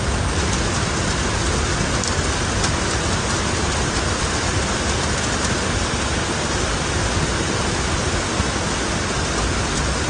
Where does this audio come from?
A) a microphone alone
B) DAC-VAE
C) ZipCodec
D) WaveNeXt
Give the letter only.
A